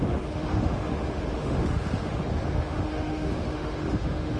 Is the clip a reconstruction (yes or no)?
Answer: yes